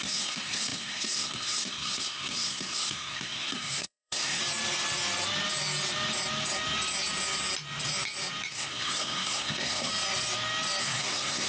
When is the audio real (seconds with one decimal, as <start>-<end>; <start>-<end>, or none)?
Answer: 4.4-8.5; 9.9-10.8